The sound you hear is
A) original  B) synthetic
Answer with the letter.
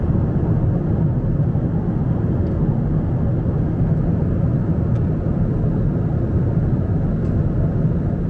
A